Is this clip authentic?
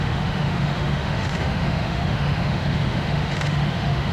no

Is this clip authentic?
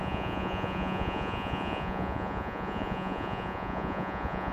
no